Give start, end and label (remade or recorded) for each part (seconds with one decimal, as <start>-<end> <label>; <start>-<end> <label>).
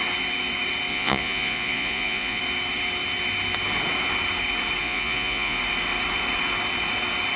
0.0-0.9 recorded; 0.9-2.4 remade; 2.4-4.8 recorded; 4.8-5.6 remade; 5.6-7.4 recorded